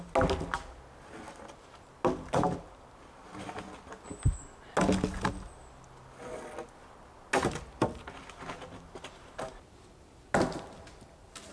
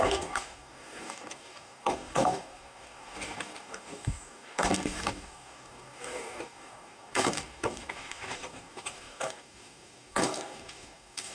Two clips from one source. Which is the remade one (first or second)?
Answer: second